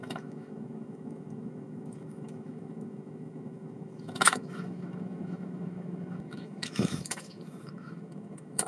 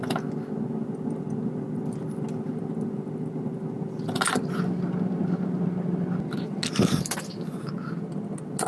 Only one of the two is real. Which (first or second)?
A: second